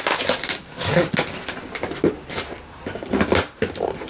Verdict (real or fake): real